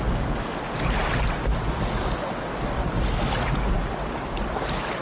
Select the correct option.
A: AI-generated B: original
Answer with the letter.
B